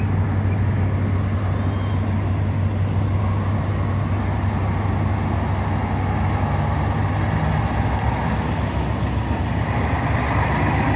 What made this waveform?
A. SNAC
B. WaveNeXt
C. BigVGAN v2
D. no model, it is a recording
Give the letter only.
D